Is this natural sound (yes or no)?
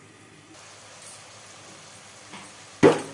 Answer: yes